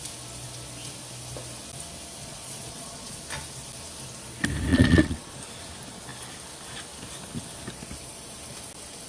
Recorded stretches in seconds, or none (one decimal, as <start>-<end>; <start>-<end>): 0.0-2.2; 3.2-4.7; 5.3-9.1